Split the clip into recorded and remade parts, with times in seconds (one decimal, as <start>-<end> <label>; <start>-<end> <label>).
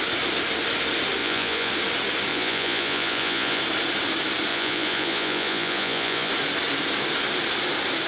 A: 0.0-1.2 recorded; 1.2-1.7 remade; 1.7-2.3 recorded; 2.3-3.6 remade; 3.6-4.5 recorded; 4.5-6.3 remade; 6.3-8.1 recorded